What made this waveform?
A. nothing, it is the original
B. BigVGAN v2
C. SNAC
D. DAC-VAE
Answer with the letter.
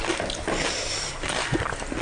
A